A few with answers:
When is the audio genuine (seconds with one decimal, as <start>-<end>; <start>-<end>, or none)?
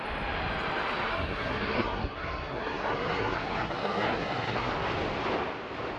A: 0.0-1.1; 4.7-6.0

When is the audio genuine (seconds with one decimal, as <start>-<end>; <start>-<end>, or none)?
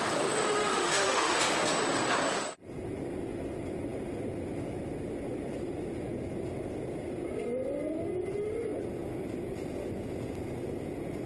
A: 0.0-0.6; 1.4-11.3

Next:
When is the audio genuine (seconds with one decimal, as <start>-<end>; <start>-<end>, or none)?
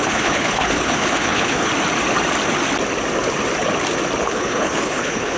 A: 1.7-4.2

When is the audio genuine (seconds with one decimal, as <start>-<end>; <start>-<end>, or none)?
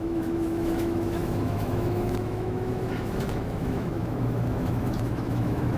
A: none